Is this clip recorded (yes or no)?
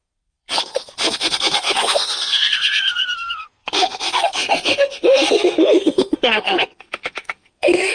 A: no